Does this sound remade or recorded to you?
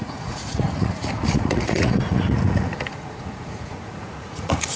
remade